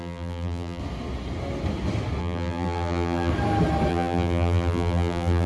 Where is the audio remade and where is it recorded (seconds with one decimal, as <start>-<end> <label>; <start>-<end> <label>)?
0.0-0.8 remade; 0.8-2.2 recorded; 2.2-3.3 remade; 3.3-3.9 recorded; 3.9-5.5 remade